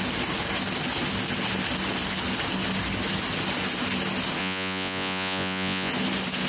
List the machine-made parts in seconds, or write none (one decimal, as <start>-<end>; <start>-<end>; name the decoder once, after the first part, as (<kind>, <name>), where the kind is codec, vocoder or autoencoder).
4.4-5.9 (vocoder, Vocos)